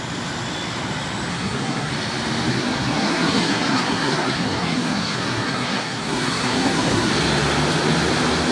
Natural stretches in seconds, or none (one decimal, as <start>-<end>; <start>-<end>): 0.0-1.3; 1.9-2.5; 7.1-8.5